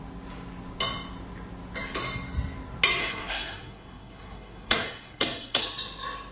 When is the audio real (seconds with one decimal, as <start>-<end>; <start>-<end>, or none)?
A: 0.0-3.0; 5.6-6.3